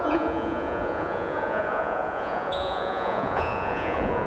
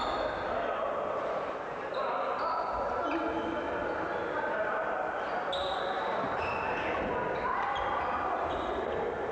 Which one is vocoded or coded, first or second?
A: first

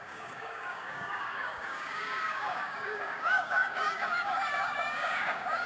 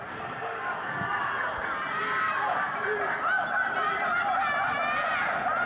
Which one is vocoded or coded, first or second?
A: first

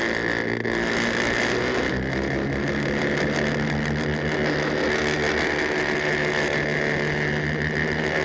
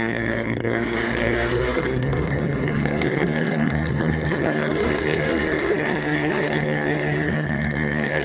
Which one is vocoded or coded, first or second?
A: second